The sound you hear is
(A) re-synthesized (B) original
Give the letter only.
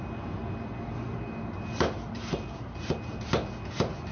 B